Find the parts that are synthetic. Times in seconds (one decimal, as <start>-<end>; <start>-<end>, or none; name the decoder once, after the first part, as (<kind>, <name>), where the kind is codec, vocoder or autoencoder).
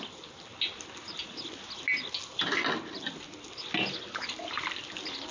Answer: none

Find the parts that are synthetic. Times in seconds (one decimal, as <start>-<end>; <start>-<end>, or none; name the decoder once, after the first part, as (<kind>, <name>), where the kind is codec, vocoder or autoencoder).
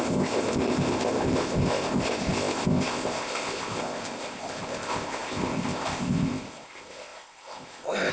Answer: 0.0-8.1 (codec, ZipCodec)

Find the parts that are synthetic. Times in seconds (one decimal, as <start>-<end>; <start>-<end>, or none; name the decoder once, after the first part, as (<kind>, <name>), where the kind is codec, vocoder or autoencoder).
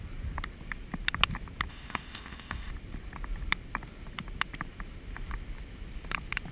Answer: 1.7-2.7 (codec, ZipCodec)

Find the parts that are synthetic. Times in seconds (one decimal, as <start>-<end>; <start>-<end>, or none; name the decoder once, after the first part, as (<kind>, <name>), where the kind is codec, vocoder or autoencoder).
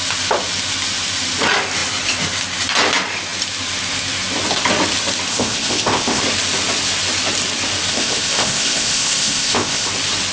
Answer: 5.3-6.2 (codec, ZipCodec); 7.9-9.9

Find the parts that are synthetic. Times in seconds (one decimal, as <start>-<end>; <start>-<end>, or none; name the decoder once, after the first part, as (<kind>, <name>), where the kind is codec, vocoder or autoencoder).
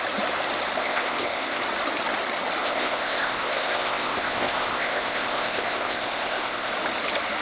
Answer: 0.8-1.6 (codec, ZipCodec); 2.6-6.7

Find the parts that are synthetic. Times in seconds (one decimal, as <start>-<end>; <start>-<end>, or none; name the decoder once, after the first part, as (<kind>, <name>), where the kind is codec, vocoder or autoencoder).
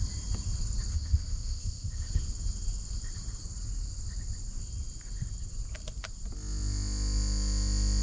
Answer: 0.9-2.1 (codec, ZipCodec)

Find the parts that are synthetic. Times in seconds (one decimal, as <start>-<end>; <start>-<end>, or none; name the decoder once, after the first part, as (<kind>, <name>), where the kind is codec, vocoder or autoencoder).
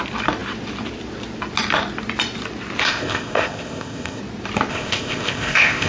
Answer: 2.8-4.2 (codec, ZipCodec); 4.7-5.9